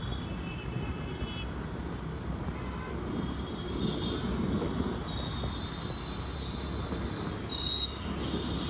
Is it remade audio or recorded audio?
recorded